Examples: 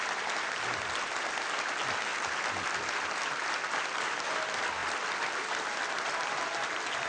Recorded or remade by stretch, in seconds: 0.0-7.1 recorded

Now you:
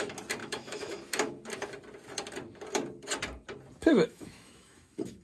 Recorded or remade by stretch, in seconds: 0.0-0.4 recorded; 0.4-1.0 remade; 1.0-3.8 recorded; 3.8-5.2 remade

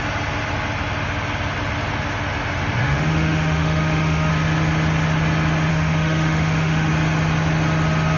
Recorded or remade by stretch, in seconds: 0.0-2.8 recorded; 2.8-4.3 remade; 4.3-5.7 recorded; 5.7-6.9 remade; 6.9-8.2 recorded

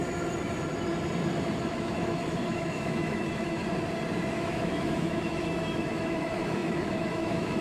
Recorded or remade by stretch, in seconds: 0.0-1.6 recorded; 1.6-3.6 remade; 3.6-4.3 recorded; 4.3-7.6 remade

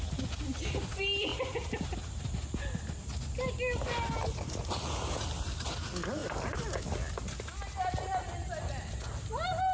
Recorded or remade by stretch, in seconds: 0.0-9.7 recorded